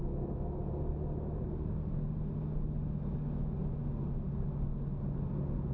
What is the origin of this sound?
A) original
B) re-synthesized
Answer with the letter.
A